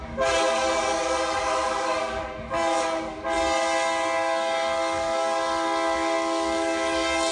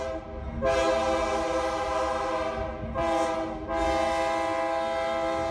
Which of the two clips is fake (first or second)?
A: first